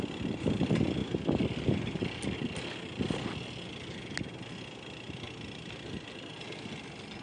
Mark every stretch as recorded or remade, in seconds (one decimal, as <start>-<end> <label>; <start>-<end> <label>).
0.0-7.2 recorded